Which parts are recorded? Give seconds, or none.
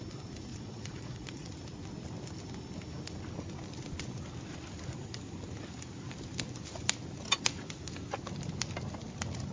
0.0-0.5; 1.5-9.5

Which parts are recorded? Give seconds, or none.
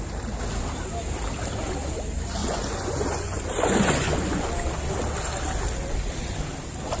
0.0-2.4; 4.5-7.0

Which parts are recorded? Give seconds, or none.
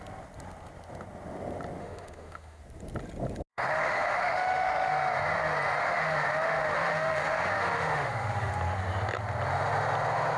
0.0-1.8; 2.6-3.5; 4.9-5.8; 8.5-10.4